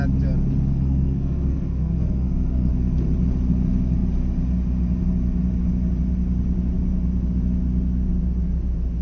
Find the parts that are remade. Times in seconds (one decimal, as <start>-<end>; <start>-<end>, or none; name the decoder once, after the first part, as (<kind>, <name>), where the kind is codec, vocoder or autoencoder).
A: 0.7-2.7 (codec, SNAC)